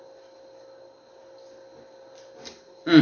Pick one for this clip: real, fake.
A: real